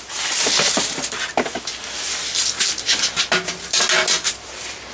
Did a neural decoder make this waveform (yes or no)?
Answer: no